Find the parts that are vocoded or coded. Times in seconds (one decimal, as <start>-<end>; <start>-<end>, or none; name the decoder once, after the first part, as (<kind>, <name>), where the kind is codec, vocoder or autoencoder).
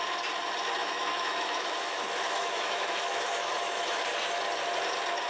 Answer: 0.8-4.0 (autoencoder, DAC-VAE)